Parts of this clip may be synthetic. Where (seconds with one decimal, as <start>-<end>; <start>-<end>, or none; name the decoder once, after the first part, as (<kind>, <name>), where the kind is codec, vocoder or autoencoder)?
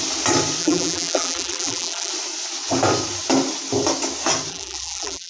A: 0.6-2.1 (vocoder, BigVGAN v2); 4.5-5.3